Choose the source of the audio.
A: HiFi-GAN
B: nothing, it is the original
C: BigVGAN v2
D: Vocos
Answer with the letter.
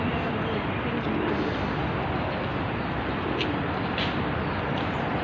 B